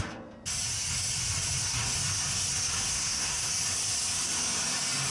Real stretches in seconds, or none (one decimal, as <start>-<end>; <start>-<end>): 0.0-2.9; 3.5-5.1